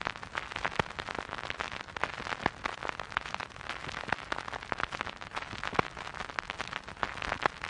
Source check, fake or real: real